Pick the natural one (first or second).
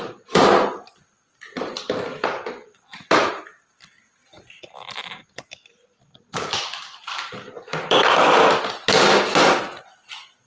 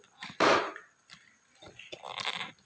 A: first